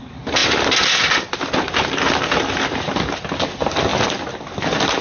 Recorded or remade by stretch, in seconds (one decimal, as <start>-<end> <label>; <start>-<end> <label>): 0.0-5.0 recorded